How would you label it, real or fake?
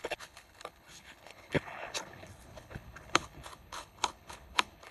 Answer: fake